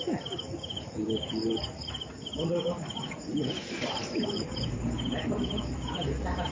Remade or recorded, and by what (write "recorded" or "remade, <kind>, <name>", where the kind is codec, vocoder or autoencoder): remade, vocoder, BigVGAN v2